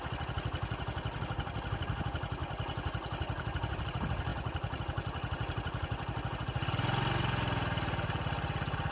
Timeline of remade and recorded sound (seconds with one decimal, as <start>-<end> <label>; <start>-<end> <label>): 0.0-8.9 recorded